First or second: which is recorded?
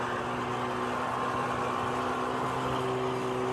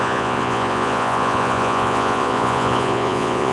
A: first